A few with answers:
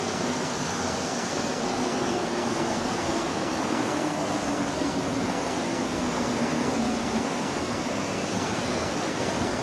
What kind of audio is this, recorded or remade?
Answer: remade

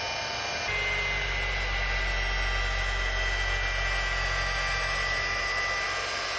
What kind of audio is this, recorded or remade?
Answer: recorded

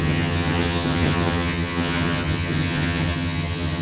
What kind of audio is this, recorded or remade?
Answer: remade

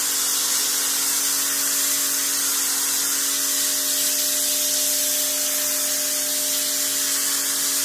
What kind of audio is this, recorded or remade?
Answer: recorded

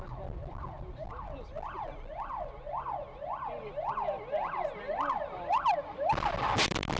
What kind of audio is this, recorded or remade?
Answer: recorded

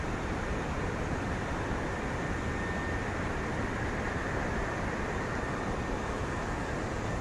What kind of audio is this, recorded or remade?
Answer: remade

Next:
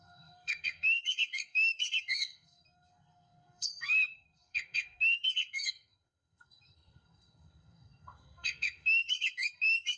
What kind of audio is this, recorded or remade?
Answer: remade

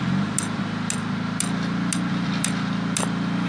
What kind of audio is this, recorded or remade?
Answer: recorded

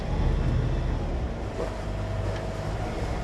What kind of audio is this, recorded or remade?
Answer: recorded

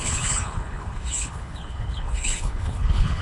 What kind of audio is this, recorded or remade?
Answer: remade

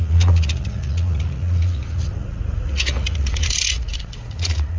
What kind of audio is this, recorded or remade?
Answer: remade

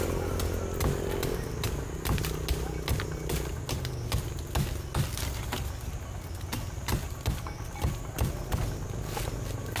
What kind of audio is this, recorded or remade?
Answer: recorded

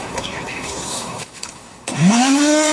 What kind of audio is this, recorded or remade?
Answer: remade